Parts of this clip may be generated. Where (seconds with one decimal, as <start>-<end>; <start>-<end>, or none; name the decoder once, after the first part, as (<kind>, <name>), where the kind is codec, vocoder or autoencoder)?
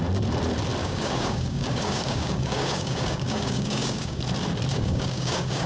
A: 0.8-4.2 (codec, DAC); 4.7-5.7